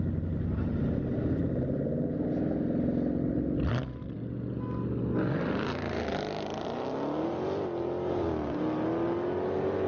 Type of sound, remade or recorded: recorded